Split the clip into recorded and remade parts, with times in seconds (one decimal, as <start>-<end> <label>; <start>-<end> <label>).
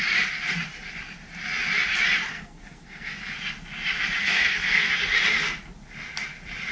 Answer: 0.0-2.3 recorded; 2.3-3.2 remade; 3.2-4.2 recorded; 4.2-4.9 remade; 4.9-6.7 recorded